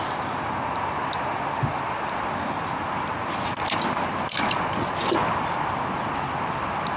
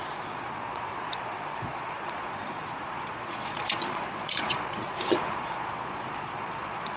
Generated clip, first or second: second